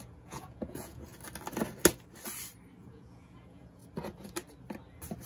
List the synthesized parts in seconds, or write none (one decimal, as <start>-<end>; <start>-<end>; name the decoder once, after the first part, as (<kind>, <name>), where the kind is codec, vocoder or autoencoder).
0.0-1.1 (vocoder, Vocos); 2.8-3.8